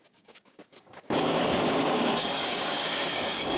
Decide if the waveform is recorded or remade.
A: remade